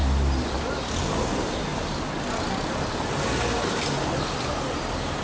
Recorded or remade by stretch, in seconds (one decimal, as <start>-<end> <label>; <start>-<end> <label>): 0.0-5.2 recorded